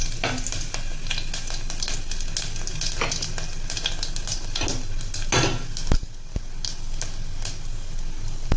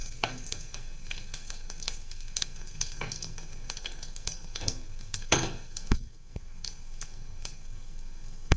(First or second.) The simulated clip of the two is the second